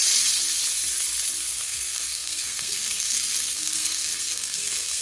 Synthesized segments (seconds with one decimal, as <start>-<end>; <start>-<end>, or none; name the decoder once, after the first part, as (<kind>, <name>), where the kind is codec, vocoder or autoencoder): 1.4-5.0 (codec, SNAC)